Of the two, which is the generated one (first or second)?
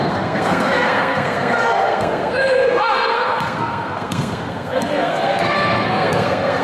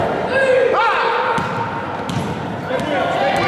first